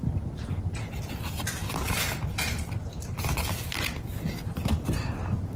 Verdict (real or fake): real